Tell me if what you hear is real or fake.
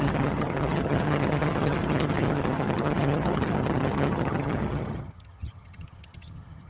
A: fake